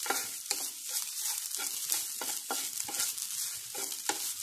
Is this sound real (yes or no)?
yes